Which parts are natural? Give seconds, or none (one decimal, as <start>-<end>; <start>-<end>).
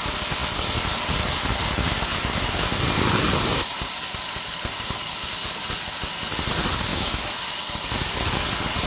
0.0-6.9; 7.5-8.9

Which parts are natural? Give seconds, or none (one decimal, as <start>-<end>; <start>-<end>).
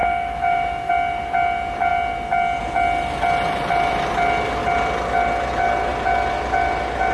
0.9-7.1